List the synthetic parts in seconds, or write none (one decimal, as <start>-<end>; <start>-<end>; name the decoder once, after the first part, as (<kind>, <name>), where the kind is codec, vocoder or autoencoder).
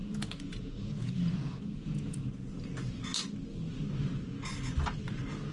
0.0-2.3 (vocoder, Vocos)